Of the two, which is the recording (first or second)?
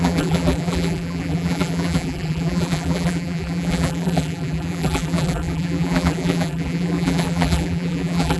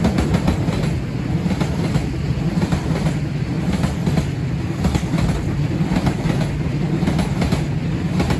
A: second